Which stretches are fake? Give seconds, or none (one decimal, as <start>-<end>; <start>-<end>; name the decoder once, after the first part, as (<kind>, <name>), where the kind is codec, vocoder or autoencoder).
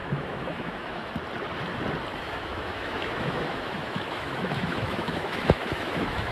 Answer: 0.0-1.1 (autoencoder, DAC-VAE); 2.1-6.3